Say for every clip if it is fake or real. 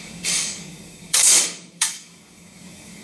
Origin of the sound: fake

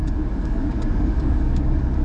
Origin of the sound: fake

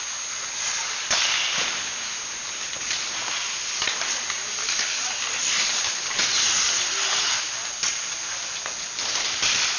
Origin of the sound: real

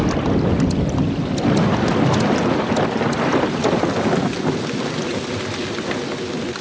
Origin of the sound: real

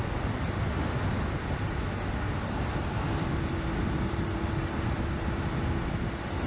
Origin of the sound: real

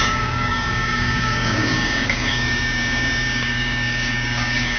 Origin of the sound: fake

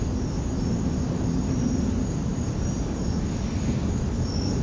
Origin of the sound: real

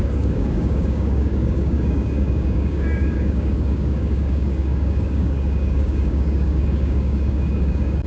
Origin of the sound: fake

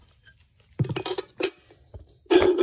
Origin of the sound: real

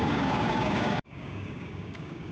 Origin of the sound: fake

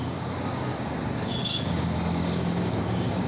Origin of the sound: fake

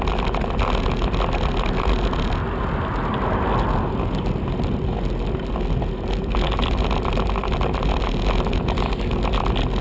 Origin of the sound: real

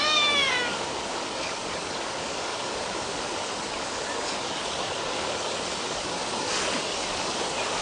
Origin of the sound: fake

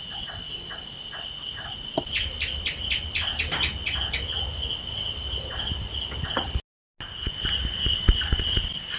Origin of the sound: real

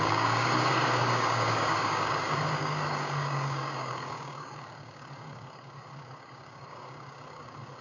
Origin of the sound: fake